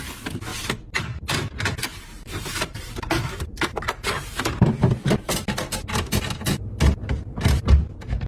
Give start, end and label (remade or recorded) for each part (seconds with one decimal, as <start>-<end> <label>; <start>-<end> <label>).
0.0-1.9 recorded; 1.9-5.5 remade; 5.5-7.0 recorded; 7.0-8.3 remade